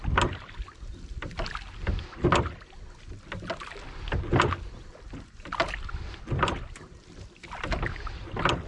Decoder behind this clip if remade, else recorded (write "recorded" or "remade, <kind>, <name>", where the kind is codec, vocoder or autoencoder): recorded